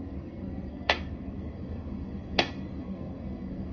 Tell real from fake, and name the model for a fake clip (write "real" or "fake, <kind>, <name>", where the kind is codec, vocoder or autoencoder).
fake, codec, SNAC